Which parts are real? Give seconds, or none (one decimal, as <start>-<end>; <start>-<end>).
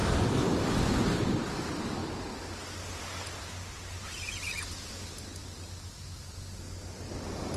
0.0-7.6